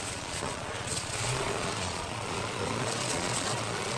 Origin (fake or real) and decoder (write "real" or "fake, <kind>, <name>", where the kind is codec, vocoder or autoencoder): fake, vocoder, Vocos